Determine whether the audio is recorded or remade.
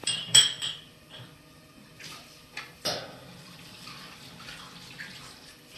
remade